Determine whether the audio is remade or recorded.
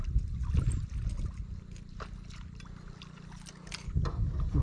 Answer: recorded